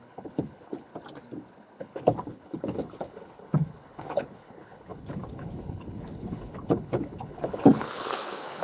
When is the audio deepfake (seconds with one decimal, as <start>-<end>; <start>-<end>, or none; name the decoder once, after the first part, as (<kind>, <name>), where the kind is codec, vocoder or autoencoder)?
0.0-0.9 (codec, HILCodec); 1.8-8.6